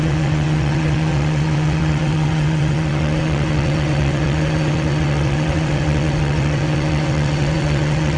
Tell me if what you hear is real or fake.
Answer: fake